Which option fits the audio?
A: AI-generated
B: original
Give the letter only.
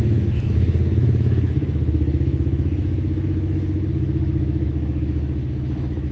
A